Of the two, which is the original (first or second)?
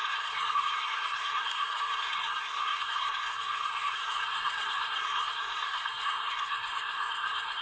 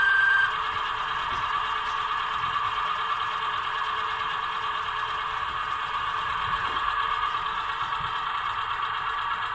second